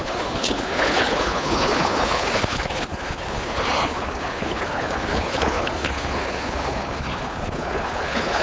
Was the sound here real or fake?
fake